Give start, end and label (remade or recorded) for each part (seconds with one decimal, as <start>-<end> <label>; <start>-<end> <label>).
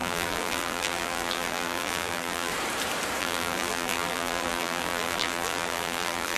0.0-2.5 remade; 2.5-3.2 recorded; 3.2-6.4 remade